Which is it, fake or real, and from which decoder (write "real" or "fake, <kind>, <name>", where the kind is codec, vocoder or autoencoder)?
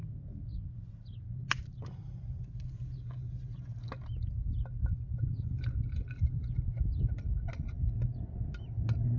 real